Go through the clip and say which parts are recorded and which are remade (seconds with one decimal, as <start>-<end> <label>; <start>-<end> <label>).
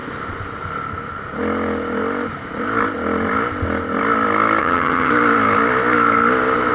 0.0-4.6 recorded; 4.6-5.1 remade; 5.1-6.7 recorded